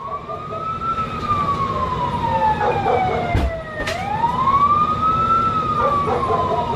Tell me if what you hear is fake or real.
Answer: real